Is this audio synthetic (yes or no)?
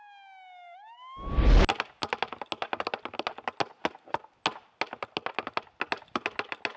no